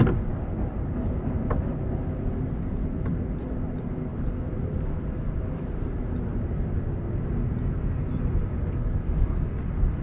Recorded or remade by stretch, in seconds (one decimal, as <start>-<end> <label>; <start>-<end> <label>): 0.0-10.0 recorded